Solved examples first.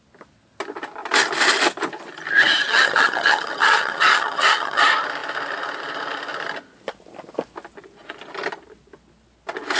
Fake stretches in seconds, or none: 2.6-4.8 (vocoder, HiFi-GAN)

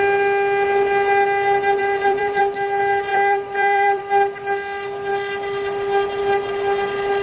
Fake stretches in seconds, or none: 1.8-2.4 (vocoder, BigVGAN v2); 3.1-4.0

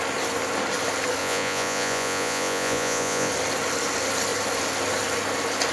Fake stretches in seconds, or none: 1.2-3.3 (vocoder, Vocos)

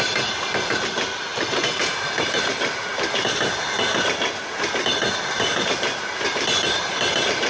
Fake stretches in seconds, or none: 1.3-3.2 (vocoder, BigVGAN v2); 5.5-7.1

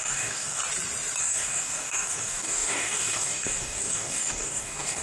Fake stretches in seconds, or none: 0.0-0.6 (codec, DAC); 1.2-5.0

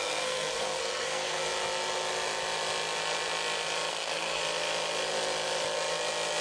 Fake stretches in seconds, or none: 0.0-1.4 (codec, SNAC); 3.9-4.4